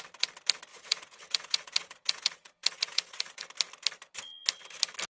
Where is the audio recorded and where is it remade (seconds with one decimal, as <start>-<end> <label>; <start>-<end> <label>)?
0.0-0.7 recorded; 0.7-3.4 remade; 3.4-5.2 recorded

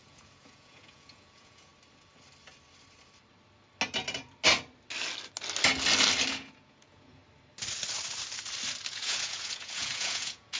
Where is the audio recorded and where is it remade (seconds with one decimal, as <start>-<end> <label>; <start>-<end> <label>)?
0.0-1.7 remade; 1.7-6.3 recorded; 6.3-7.2 remade; 7.2-8.9 recorded; 8.9-10.6 remade